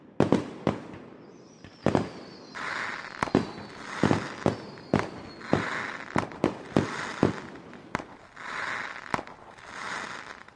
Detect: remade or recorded recorded